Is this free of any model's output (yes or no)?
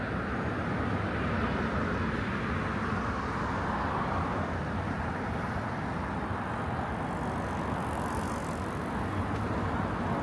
yes